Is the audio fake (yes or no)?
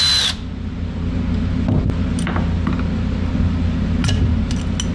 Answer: no